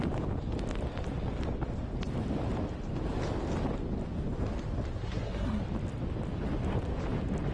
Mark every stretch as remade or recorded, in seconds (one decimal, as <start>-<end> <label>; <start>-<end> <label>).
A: 0.0-5.0 recorded; 5.0-5.6 remade; 5.6-7.5 recorded